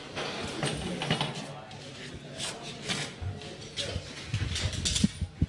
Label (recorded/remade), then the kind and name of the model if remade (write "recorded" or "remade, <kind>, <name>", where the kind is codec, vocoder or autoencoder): recorded